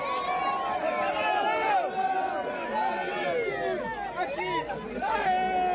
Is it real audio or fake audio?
real